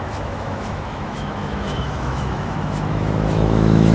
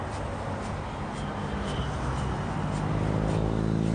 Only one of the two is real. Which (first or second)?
second